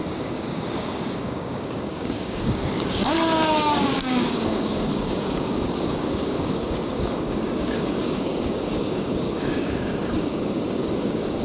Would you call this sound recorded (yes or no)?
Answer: no